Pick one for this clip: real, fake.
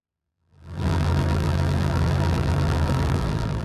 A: fake